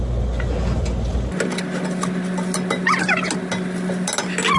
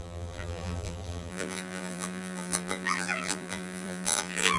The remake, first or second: second